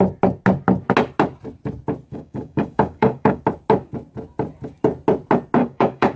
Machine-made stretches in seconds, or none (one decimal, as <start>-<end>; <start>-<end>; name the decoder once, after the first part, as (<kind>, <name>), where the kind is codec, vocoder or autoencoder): 2.1-3.4 (codec, DAC); 5.6-6.2